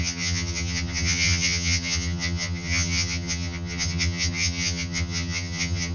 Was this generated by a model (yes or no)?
yes